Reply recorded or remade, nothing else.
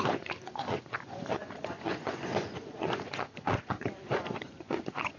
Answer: remade